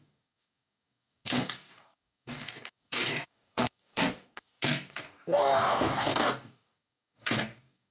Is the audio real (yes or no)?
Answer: no